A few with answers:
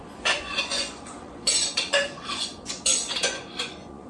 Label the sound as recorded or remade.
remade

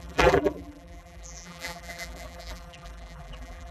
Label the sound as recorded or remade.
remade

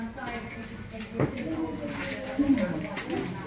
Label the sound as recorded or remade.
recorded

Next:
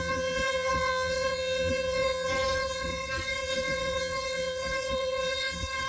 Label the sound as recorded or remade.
remade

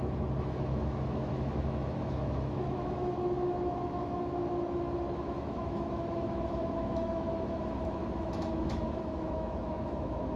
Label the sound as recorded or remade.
remade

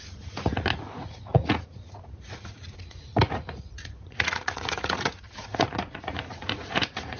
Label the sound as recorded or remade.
remade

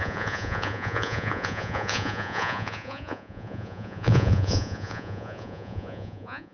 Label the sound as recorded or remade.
remade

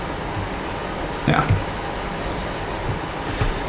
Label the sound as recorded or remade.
recorded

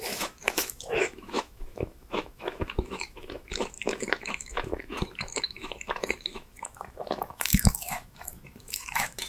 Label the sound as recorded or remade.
remade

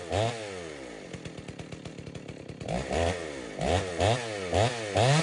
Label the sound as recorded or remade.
recorded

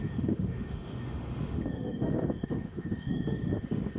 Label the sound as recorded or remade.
remade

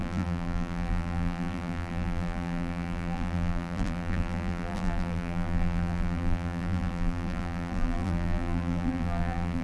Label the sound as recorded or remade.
remade